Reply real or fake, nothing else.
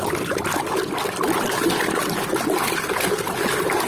real